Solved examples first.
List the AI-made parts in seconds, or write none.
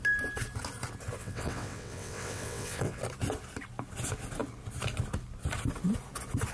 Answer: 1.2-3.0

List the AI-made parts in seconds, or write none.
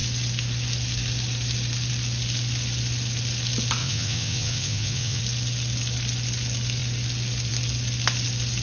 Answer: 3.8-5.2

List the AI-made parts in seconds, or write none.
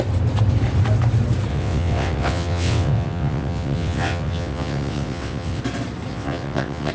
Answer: 1.5-5.6; 6.1-6.9